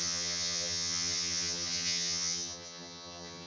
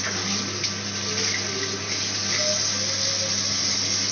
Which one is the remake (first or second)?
first